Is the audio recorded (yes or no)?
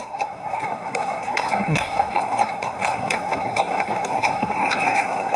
no